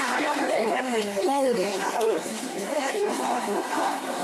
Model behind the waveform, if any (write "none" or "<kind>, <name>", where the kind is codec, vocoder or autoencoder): codec, SNAC